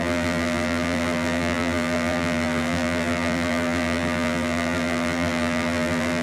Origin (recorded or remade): remade